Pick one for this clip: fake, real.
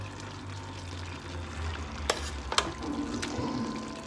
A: real